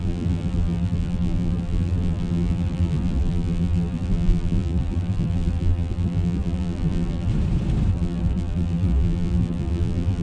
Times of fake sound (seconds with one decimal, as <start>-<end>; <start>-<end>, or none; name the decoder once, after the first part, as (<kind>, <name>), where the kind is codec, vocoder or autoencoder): 0.0-7.3 (vocoder, BigVGAN v2); 7.9-10.2